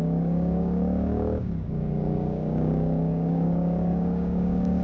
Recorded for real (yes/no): no